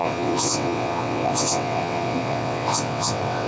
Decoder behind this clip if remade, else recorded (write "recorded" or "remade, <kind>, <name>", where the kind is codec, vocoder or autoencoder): remade, vocoder, WaveNeXt